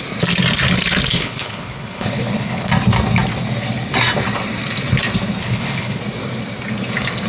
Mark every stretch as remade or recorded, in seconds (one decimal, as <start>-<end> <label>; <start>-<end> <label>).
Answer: 0.0-1.1 recorded; 1.1-2.7 remade; 2.7-5.4 recorded; 5.4-6.0 remade; 6.0-7.3 recorded